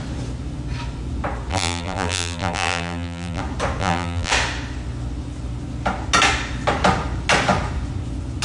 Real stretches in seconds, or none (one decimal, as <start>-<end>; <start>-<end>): 0.0-1.5; 3.4-3.8; 4.3-8.4